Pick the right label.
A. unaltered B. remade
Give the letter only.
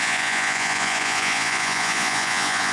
B